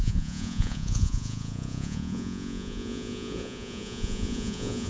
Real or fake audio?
fake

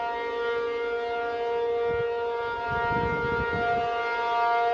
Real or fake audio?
real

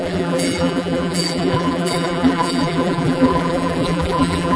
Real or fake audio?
fake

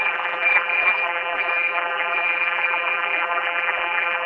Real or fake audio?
fake